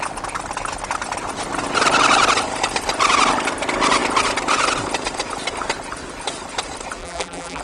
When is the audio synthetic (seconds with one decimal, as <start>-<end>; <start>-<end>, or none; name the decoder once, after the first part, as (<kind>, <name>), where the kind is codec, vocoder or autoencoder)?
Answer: 7.0-7.6 (vocoder, BigVGAN v2)